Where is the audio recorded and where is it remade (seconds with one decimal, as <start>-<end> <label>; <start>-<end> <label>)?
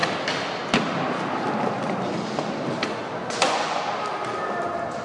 0.0-3.2 recorded; 3.2-3.8 remade; 3.8-5.0 recorded